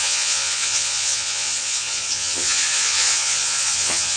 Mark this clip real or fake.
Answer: fake